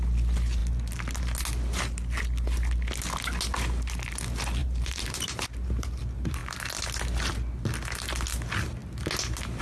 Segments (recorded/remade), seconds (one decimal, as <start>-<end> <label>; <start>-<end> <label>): 0.0-4.6 recorded; 4.6-6.0 remade; 6.0-9.6 recorded